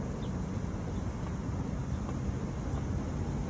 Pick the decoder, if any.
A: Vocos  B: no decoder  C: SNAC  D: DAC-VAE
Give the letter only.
B